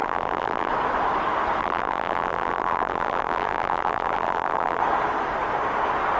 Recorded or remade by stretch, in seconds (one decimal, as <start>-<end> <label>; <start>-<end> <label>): 0.0-0.7 remade; 0.7-1.6 recorded; 1.6-4.8 remade; 4.8-6.2 recorded